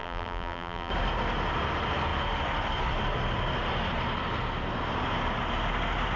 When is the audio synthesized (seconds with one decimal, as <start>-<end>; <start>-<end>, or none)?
0.0-0.9